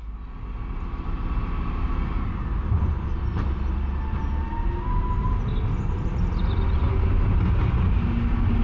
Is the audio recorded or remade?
recorded